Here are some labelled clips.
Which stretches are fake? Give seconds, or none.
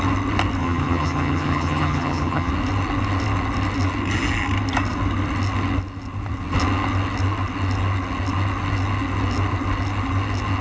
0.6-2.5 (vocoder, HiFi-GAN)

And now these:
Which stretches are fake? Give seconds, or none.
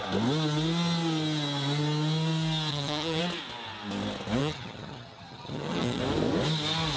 2.7-3.2 (vocoder, HiFi-GAN); 4.4-6.0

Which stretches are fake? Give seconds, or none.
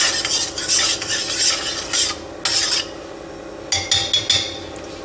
none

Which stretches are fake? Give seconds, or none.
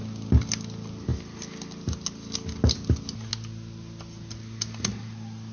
none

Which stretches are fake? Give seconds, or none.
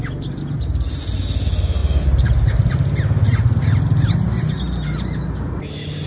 none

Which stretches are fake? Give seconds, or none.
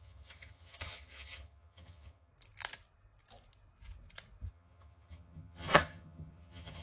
0.0-2.3 (vocoder, HiFi-GAN); 4.5-6.8